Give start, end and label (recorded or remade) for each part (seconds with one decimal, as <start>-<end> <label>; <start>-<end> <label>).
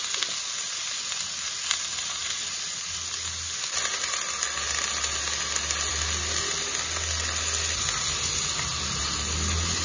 0.0-9.8 recorded